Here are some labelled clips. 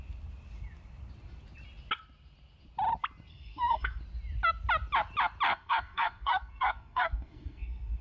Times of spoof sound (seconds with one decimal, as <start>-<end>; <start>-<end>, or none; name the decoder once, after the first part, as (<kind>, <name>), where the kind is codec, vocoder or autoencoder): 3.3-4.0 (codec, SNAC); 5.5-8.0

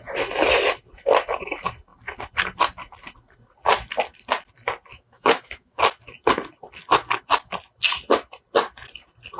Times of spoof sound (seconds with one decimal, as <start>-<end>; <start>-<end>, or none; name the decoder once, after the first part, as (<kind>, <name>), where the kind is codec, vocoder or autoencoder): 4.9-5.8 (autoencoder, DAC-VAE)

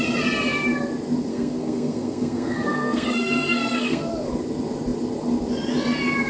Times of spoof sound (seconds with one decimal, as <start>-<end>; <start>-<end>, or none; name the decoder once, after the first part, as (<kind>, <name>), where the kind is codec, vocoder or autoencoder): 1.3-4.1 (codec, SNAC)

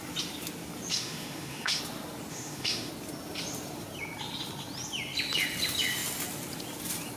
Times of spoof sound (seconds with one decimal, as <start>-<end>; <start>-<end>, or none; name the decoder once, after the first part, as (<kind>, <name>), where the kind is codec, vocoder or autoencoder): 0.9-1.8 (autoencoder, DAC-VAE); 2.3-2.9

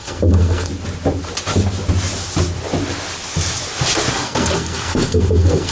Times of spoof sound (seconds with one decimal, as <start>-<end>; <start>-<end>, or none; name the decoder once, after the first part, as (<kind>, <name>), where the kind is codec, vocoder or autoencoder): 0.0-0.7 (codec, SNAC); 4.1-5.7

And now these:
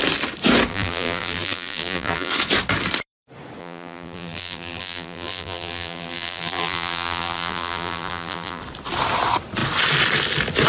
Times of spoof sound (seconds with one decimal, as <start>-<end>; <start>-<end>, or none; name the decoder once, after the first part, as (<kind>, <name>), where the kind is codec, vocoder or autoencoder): 0.7-2.3 (vocoder, BigVGAN v2); 3.6-8.6

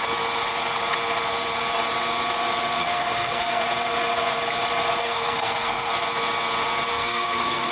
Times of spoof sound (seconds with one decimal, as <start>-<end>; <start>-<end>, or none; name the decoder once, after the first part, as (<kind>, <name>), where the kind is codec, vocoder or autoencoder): 2.8-3.6 (codec, SNAC); 5.0-5.9; 6.9-7.7